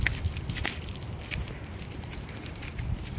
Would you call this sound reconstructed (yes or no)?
no